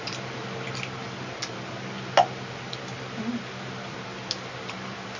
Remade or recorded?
recorded